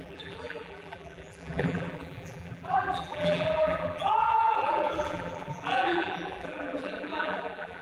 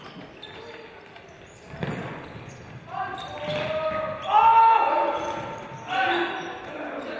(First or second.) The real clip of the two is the second